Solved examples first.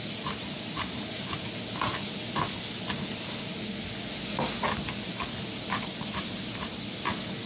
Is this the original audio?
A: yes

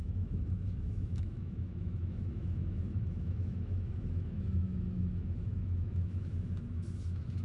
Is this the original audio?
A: no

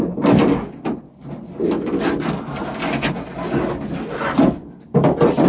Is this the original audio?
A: yes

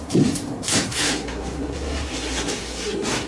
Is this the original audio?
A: no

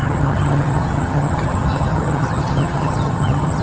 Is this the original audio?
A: no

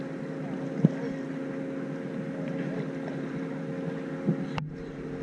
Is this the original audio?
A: yes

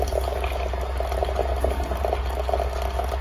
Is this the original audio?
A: yes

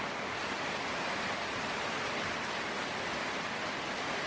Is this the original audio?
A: yes